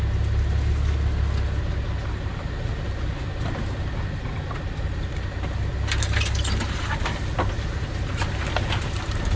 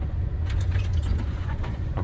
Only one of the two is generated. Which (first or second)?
second